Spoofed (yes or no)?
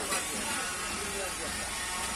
yes